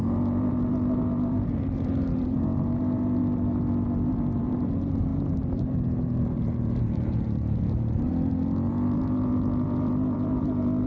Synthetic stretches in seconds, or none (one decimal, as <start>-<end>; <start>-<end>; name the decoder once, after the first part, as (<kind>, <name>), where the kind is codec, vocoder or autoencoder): 0.0-3.2 (vocoder, BigVGAN v2); 4.1-8.1; 8.7-10.9